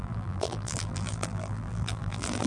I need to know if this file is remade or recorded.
remade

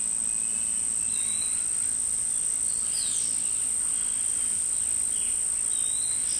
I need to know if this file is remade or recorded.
recorded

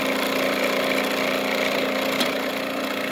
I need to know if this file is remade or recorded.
recorded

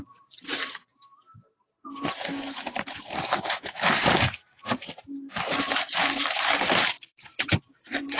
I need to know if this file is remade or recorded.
remade